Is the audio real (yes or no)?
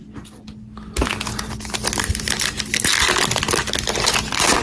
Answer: yes